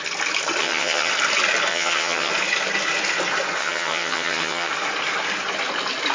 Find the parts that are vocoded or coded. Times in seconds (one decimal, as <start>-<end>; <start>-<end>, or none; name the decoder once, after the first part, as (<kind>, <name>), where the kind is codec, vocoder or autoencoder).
0.6-1.1 (vocoder, HiFi-GAN); 1.7-2.3; 3.6-4.7